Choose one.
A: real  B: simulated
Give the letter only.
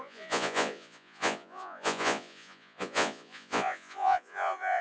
B